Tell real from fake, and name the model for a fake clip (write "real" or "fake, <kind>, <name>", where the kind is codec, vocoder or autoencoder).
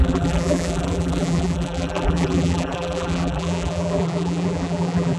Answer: fake, vocoder, BigVGAN v2